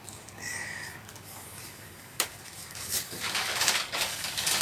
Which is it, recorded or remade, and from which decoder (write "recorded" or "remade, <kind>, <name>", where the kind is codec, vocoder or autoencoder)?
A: remade, codec, DAC